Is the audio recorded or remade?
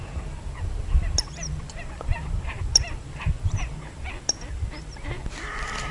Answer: remade